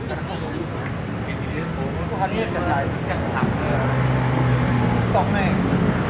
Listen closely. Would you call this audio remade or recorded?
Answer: recorded